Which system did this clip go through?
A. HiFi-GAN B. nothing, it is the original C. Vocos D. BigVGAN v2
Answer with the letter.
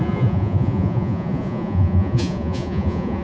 C